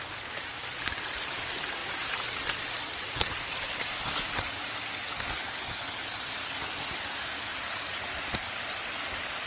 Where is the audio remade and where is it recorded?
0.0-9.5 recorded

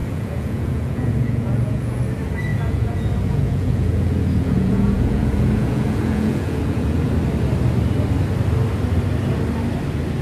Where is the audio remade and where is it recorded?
0.0-2.0 remade; 2.0-2.5 recorded; 2.5-7.1 remade; 7.1-10.2 recorded

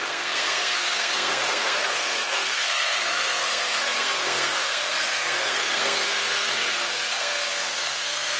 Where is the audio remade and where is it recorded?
0.0-8.4 remade

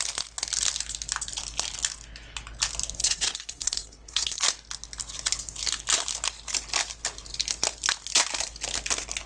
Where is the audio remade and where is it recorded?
0.0-3.0 recorded; 3.0-4.4 remade; 4.4-9.3 recorded

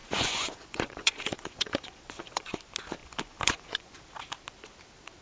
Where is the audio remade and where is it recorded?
0.0-2.6 remade; 2.6-3.0 recorded; 3.0-4.0 remade; 4.0-5.2 recorded

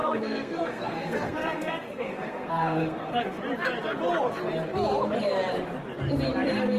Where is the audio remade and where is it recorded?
0.0-3.4 remade; 3.4-6.8 recorded